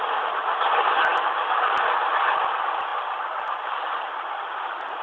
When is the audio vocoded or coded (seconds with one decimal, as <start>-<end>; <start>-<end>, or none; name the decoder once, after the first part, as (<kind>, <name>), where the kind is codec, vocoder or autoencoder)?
none

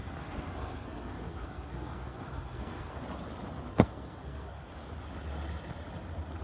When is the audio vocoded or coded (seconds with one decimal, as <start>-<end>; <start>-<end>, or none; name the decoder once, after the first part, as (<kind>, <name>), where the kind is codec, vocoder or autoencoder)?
0.0-3.0 (codec, SNAC); 3.7-4.7